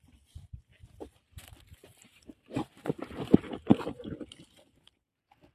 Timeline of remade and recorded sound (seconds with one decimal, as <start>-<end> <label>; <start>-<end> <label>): 0.0-2.0 recorded; 2.0-3.0 remade; 3.0-5.5 recorded